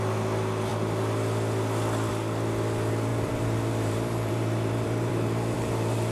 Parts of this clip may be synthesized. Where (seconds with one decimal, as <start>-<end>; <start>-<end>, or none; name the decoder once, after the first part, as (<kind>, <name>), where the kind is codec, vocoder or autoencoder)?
3.1-6.1 (vocoder, BigVGAN v2)